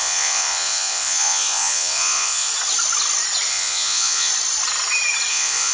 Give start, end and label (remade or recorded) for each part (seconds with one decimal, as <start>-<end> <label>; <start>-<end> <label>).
0.0-2.5 remade; 2.5-3.5 recorded; 3.5-4.3 remade; 4.3-5.3 recorded; 5.3-5.7 remade